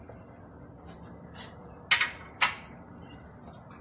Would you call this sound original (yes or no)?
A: yes